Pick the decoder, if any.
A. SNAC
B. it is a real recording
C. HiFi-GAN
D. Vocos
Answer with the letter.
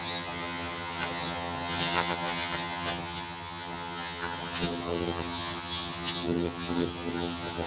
C